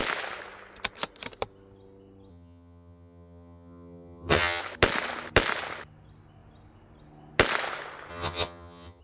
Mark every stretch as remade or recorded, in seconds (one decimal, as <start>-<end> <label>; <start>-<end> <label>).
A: 0.0-2.3 recorded; 2.3-4.6 remade; 4.6-8.1 recorded; 8.1-9.0 remade